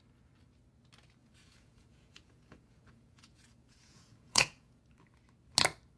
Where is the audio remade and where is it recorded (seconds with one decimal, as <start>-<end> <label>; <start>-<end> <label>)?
0.0-1.2 recorded; 1.2-4.8 remade; 4.8-6.0 recorded